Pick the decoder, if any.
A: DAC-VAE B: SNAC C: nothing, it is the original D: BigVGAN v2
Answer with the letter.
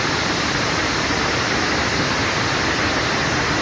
C